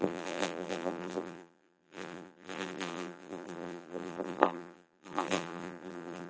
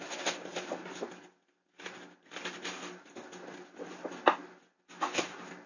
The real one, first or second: second